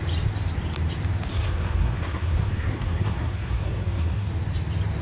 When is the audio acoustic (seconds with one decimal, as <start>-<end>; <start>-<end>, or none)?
0.0-1.3; 4.3-5.0